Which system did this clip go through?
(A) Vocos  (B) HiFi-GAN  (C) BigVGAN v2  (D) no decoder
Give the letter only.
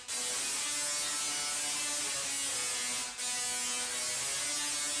D